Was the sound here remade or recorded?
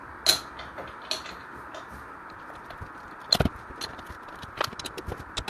recorded